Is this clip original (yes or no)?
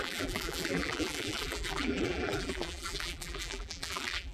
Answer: no